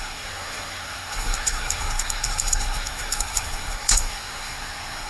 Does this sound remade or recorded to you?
remade